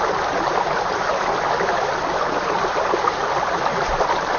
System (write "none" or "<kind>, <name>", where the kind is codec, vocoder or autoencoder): none